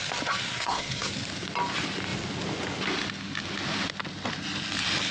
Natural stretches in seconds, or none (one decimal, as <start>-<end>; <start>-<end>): 0.0-0.5; 1.1-5.1